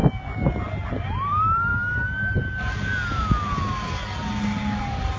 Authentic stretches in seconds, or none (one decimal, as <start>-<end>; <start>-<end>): 0.0-0.9; 1.7-4.8